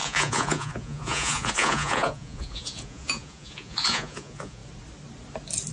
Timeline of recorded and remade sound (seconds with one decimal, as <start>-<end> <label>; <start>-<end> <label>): 0.0-4.6 remade; 4.6-5.7 recorded